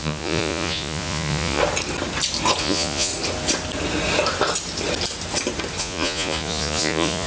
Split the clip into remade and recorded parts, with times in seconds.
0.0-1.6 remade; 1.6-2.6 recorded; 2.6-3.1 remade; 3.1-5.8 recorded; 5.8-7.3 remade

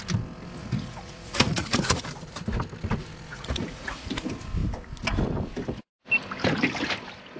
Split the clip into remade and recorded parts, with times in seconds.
0.0-0.6 recorded; 0.6-2.0 remade; 2.0-3.3 recorded; 3.3-4.0 remade; 4.0-7.4 recorded

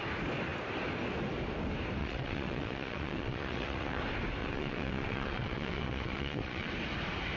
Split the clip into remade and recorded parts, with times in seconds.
0.0-2.0 recorded; 2.0-4.0 remade; 4.0-4.4 recorded; 4.4-6.7 remade; 6.7-7.4 recorded

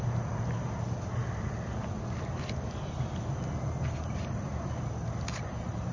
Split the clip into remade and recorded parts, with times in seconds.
0.0-5.9 recorded

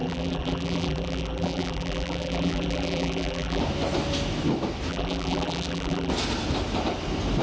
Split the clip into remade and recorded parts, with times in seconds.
0.0-3.6 remade; 3.6-4.9 recorded; 4.9-6.1 remade; 6.1-7.4 recorded

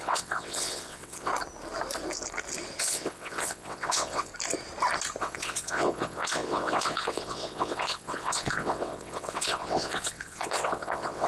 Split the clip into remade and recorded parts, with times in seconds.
0.0-1.3 remade; 1.3-2.8 recorded; 2.8-4.3 remade; 4.3-5.2 recorded; 5.2-11.3 remade

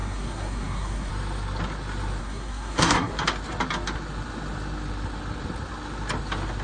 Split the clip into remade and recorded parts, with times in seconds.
0.0-1.1 remade; 1.1-2.2 recorded; 2.2-3.1 remade; 3.1-6.6 recorded